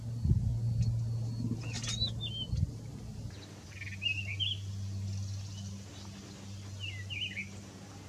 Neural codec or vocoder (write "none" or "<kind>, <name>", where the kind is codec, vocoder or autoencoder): none